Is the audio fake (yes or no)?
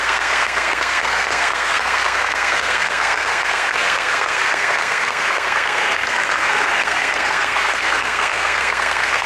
yes